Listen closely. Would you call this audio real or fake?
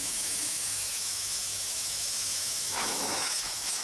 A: fake